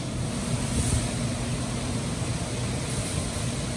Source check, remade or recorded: recorded